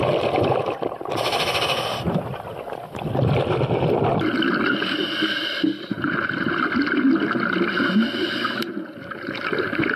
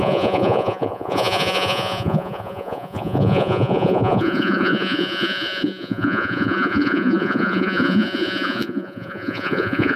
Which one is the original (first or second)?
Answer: first